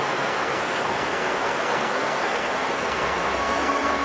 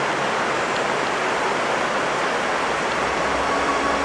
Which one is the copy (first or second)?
first